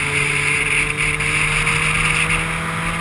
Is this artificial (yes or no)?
no